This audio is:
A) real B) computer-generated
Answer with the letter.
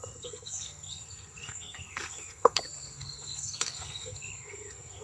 B